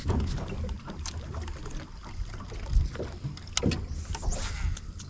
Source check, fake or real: real